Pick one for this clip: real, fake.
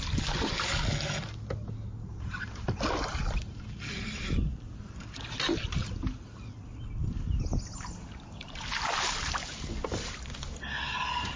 real